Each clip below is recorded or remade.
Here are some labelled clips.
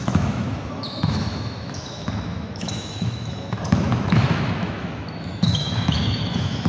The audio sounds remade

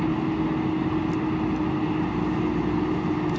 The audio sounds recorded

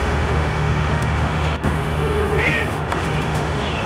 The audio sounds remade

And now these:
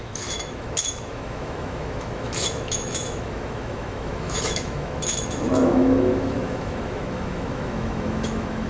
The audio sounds remade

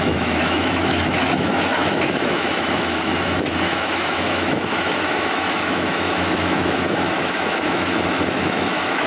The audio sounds remade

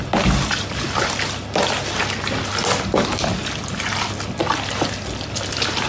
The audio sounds recorded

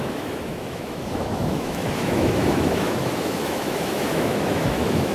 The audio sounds remade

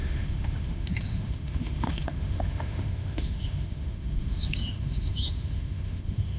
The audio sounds remade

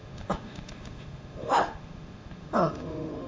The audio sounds remade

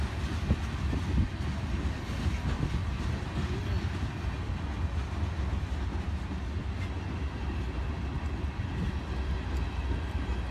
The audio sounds recorded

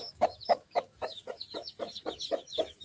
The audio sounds remade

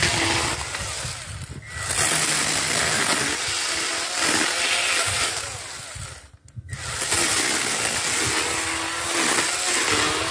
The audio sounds recorded